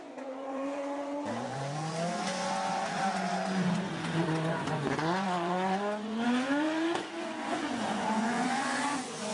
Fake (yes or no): yes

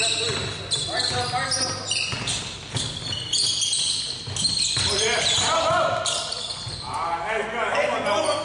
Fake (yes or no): no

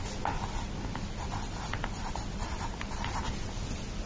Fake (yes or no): no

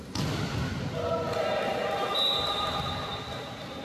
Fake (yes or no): no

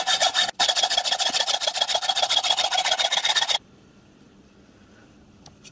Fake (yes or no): yes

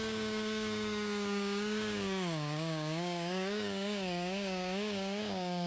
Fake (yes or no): yes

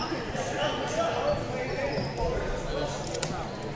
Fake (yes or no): no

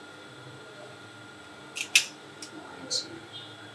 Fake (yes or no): no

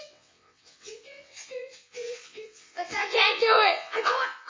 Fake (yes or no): yes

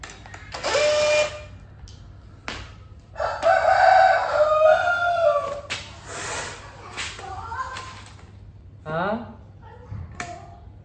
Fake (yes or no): no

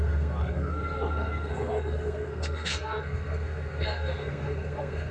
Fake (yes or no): yes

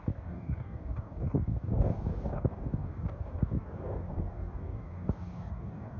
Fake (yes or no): yes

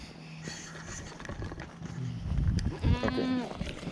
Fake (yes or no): no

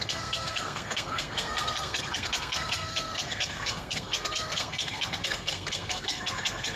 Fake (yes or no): yes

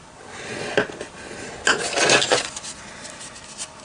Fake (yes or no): no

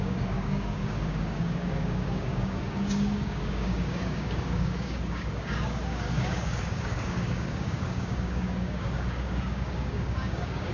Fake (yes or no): yes